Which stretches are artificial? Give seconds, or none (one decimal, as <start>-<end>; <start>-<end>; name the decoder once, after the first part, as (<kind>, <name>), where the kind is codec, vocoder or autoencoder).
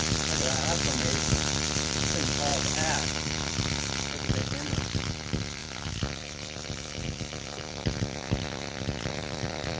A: 0.0-5.6 (vocoder, BigVGAN v2); 9.1-9.8